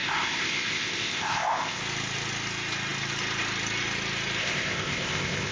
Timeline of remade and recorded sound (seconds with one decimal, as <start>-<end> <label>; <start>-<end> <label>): 0.0-1.8 remade; 1.8-4.4 recorded; 4.4-5.5 remade